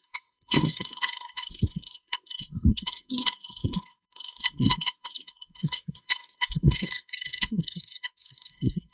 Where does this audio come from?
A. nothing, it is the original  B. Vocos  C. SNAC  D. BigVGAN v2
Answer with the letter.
C